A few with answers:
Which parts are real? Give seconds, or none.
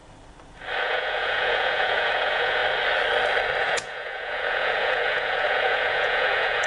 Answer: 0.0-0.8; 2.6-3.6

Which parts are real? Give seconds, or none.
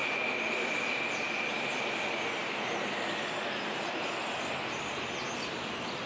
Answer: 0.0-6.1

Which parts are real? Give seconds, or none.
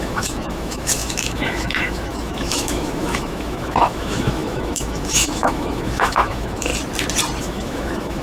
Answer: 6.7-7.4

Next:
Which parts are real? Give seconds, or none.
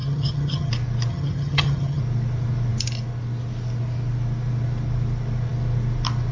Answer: 0.7-1.1; 2.0-6.3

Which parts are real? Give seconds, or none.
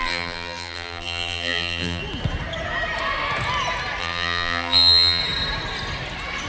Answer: 2.0-4.0; 5.2-6.5